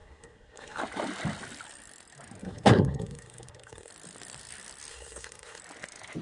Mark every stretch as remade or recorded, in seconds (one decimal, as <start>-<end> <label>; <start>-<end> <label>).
0.0-0.8 remade; 0.8-2.4 recorded; 2.4-3.9 remade; 3.9-4.9 recorded; 4.9-5.6 remade; 5.6-6.2 recorded